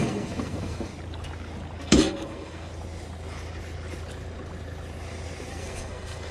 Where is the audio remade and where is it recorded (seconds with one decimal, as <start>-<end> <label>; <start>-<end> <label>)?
0.0-0.9 remade; 0.9-1.8 recorded; 1.8-2.7 remade; 2.7-5.5 recorded; 5.5-6.3 remade